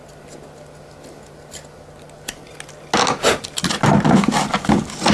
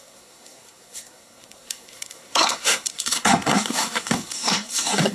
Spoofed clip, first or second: second